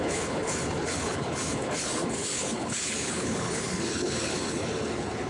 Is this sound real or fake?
fake